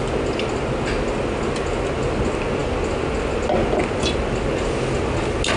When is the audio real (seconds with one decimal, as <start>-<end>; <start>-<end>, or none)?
0.0-5.6

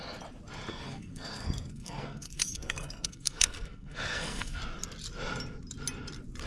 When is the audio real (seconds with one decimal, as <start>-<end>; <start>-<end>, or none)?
0.0-0.7; 4.6-6.5

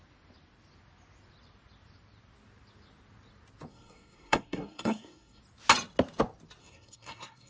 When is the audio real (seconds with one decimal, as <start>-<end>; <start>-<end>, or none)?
0.0-3.7; 5.4-6.6

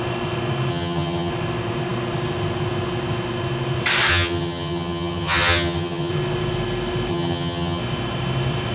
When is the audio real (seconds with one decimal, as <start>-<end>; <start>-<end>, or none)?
0.0-0.7; 1.3-4.1; 6.1-7.1; 7.8-8.7

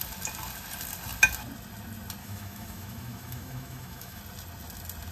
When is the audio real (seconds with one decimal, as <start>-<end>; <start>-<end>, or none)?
0.0-2.2; 4.2-5.1

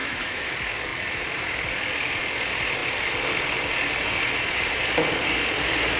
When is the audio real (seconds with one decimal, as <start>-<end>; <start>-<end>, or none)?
0.5-6.0